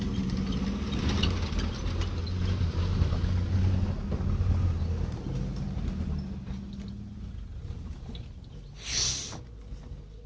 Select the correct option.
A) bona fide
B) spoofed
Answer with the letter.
A